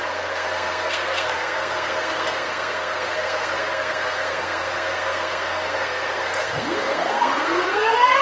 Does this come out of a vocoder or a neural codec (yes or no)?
yes